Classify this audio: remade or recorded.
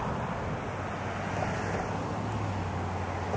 recorded